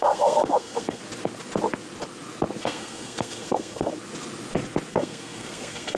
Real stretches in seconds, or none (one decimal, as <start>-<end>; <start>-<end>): 1.0-2.6; 3.9-4.9